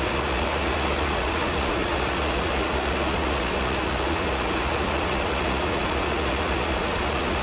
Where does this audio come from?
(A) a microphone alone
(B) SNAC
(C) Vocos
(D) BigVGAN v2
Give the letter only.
C